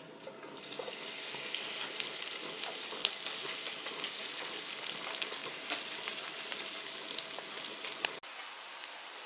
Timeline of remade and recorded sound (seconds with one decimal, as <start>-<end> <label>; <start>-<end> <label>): 0.0-5.4 recorded; 5.4-6.8 remade; 6.8-9.3 recorded